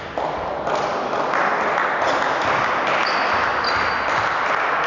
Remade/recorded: recorded